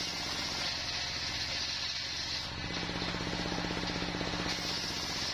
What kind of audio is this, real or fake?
real